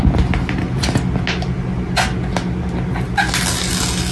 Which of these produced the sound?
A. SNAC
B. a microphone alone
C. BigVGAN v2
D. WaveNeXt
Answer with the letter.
B